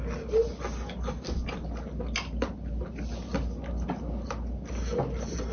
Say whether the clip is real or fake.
real